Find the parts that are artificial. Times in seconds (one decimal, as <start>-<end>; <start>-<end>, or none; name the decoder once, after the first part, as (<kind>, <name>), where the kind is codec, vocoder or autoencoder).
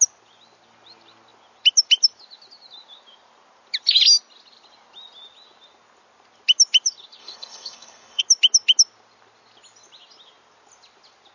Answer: 7.2-8.2 (codec, SNAC)